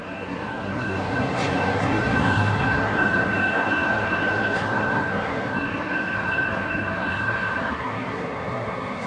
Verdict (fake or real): fake